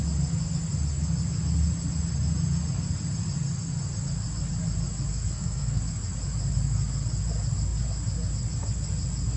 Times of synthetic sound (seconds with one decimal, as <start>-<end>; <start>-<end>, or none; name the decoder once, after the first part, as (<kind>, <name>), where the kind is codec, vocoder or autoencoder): 5.1-5.8 (codec, SNAC)